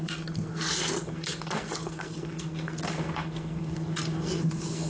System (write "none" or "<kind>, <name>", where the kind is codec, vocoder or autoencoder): codec, SNAC